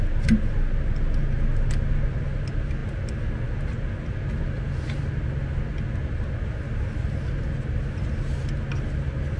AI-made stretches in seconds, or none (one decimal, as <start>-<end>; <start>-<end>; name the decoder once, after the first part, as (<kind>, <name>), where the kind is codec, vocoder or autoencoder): none